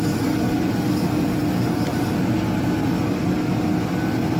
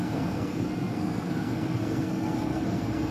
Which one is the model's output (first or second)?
second